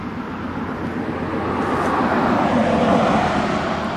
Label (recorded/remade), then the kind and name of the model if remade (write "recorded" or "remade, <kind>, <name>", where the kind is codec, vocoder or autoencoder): recorded